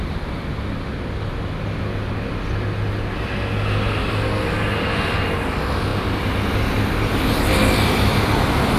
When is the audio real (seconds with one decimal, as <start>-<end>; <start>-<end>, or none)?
0.0-8.8